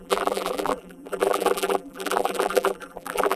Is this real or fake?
fake